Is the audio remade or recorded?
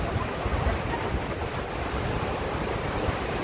recorded